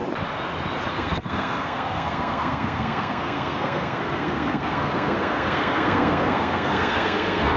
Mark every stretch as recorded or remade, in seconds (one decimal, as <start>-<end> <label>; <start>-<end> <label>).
0.0-0.9 recorded; 0.9-7.6 remade

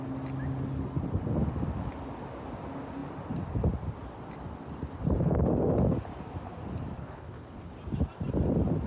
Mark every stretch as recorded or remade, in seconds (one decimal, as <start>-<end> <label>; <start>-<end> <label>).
0.0-7.0 recorded; 7.0-7.7 remade; 7.7-8.9 recorded

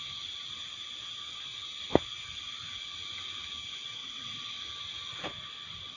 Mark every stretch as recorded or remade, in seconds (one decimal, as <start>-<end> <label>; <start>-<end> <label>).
0.0-4.0 recorded; 4.0-4.6 remade; 4.6-6.0 recorded

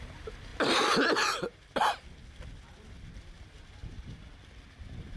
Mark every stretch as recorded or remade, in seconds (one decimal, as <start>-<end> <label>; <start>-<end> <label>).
0.0-5.2 recorded

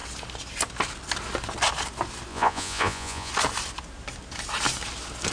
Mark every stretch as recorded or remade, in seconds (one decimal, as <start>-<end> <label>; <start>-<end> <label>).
0.0-2.3 recorded; 2.3-3.3 remade; 3.3-5.3 recorded

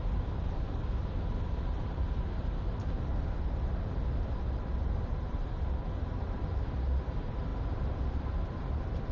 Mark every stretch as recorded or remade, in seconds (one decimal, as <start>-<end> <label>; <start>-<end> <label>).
0.0-9.1 recorded